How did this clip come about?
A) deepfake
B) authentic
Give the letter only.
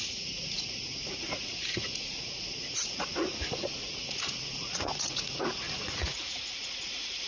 A